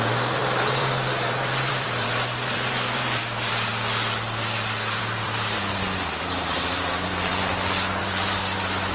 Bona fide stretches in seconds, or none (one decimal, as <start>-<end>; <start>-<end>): 3.7-5.0; 7.3-8.0